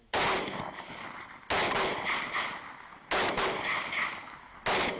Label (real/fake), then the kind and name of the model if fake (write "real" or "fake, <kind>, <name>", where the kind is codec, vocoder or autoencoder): real